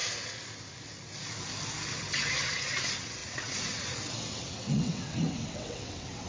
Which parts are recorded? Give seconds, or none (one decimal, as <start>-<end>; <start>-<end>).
0.0-1.9